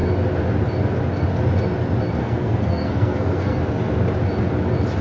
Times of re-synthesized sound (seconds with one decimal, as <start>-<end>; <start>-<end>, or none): 2.2-3.6